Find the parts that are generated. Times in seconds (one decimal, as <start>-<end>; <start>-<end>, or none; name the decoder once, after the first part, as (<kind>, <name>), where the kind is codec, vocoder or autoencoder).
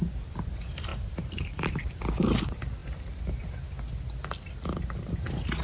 0.9-1.9 (vocoder, BigVGAN v2)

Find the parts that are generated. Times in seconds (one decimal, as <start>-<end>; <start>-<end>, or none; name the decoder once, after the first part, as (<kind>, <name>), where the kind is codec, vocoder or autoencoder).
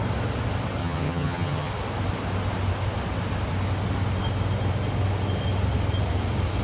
0.8-1.7 (vocoder, HiFi-GAN)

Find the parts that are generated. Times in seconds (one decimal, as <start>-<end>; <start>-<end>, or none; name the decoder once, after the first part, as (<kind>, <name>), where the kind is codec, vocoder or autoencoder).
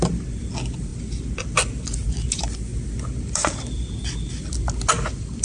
none